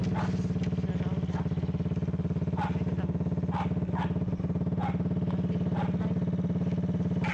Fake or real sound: real